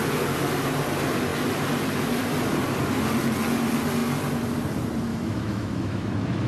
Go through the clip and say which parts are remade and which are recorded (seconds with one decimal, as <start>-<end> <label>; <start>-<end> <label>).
0.0-5.1 recorded; 5.1-6.5 remade